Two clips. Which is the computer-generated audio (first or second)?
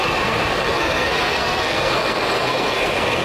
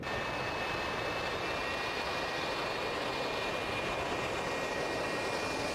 first